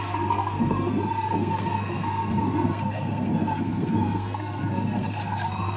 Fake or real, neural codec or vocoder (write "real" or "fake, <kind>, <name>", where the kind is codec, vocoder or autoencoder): fake, codec, SNAC